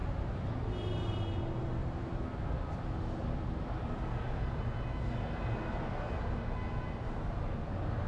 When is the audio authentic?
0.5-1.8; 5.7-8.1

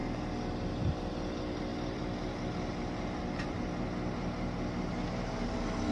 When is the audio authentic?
0.0-5.9